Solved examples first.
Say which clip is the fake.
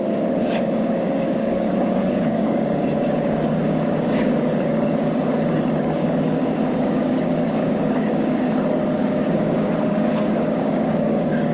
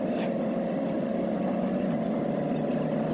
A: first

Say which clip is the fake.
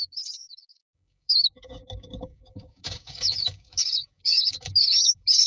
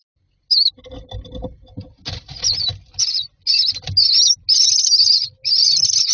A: first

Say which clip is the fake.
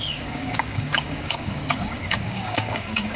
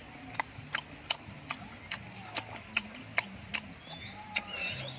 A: first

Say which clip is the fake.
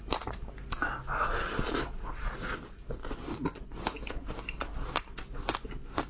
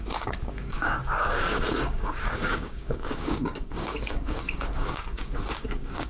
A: second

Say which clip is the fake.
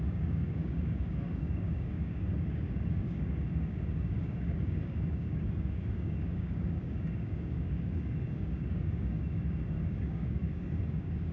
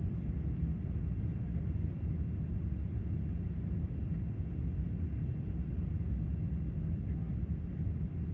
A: first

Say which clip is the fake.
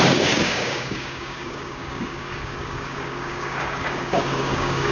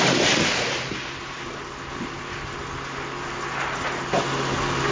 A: first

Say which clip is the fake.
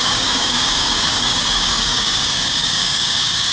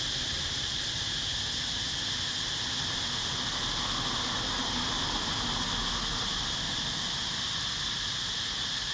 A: first